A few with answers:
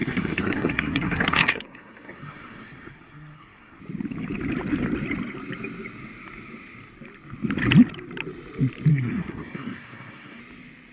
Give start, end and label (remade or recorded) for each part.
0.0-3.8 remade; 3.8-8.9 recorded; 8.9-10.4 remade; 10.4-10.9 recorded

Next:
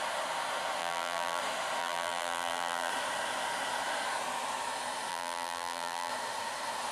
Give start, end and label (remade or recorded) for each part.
0.0-0.8 recorded; 0.8-1.4 remade; 1.4-1.8 recorded; 1.8-2.9 remade; 2.9-5.1 recorded; 5.1-6.1 remade; 6.1-6.9 recorded

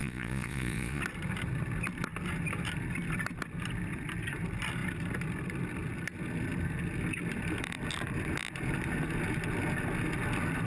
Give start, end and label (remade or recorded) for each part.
0.0-1.0 remade; 1.0-10.7 recorded